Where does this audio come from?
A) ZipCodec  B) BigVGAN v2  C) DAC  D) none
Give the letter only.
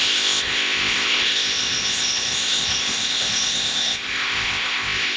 A